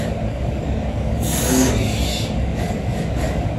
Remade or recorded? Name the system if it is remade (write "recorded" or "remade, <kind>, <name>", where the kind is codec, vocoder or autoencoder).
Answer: remade, codec, DAC